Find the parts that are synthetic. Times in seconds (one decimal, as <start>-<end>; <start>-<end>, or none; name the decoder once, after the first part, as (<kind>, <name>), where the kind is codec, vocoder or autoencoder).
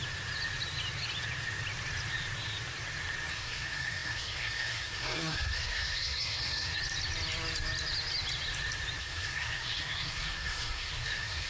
3.3-6.7 (codec, SNAC); 9.0-11.5